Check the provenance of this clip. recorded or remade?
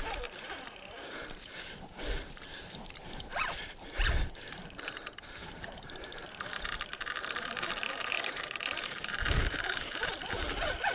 remade